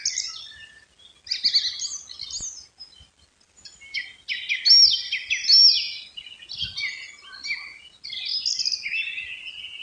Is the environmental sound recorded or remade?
recorded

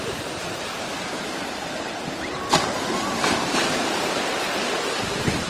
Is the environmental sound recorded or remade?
remade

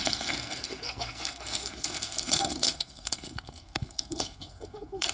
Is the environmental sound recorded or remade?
remade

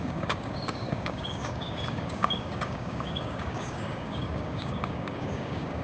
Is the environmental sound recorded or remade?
remade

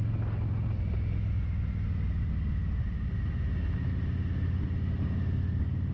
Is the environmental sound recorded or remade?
recorded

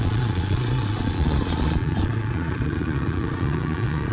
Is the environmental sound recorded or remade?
remade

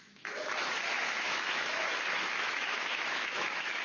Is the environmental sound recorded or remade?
remade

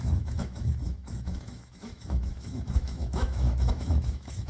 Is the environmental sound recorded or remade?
remade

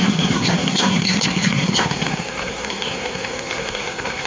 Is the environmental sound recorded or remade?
remade